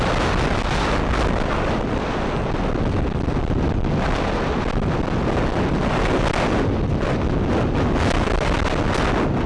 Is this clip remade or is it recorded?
recorded